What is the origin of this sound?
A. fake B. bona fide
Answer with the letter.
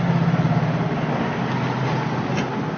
B